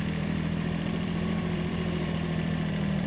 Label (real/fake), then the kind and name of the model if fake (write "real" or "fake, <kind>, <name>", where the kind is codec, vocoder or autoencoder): fake, vocoder, BigVGAN v2